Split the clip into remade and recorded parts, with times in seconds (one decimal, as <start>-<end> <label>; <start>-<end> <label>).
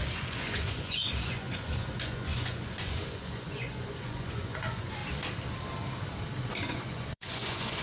0.0-5.0 remade; 5.0-6.5 recorded; 6.5-7.8 remade